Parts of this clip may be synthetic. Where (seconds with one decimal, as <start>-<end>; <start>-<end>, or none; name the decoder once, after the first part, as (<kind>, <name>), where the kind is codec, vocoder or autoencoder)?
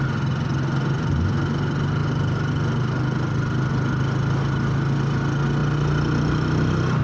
none